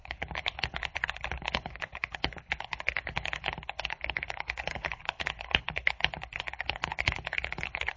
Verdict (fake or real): fake